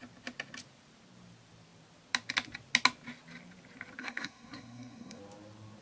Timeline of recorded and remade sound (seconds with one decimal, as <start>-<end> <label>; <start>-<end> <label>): 0.0-4.0 recorded; 4.0-5.2 remade; 5.2-5.8 recorded